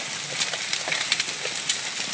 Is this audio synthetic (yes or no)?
no